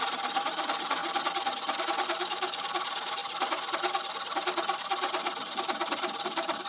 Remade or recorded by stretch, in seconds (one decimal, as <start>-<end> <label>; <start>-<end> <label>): 0.0-1.0 remade; 1.0-1.8 recorded; 1.8-3.2 remade; 3.2-5.4 recorded; 5.4-6.7 remade